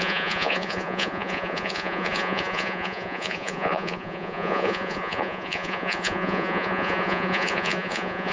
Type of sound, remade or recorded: remade